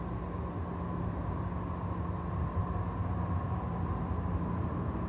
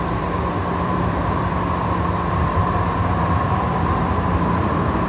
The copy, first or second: second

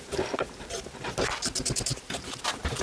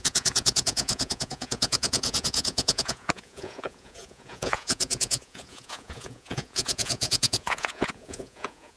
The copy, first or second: second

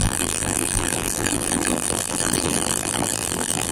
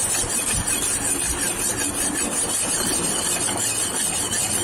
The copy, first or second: first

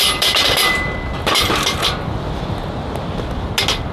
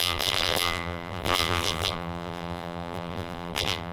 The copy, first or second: second